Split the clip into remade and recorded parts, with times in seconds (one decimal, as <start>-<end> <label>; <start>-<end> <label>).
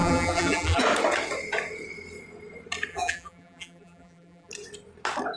0.0-0.8 remade; 0.8-2.9 recorded; 2.9-4.5 remade; 4.5-5.4 recorded